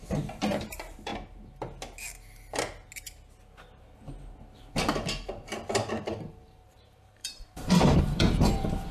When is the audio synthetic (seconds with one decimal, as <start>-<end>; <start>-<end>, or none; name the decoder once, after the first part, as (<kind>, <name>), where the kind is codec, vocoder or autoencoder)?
0.0-1.1 (vocoder, BigVGAN v2); 5.9-8.9